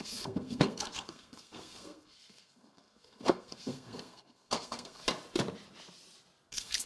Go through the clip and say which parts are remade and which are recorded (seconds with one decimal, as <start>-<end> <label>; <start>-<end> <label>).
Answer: 0.0-5.0 remade; 5.0-6.5 recorded; 6.5-6.9 remade